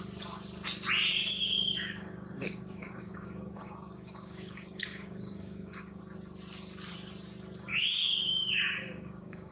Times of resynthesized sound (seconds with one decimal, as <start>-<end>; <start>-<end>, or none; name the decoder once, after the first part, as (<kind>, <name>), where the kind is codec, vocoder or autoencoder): 1.1-6.0 (codec, DAC); 7.7-9.5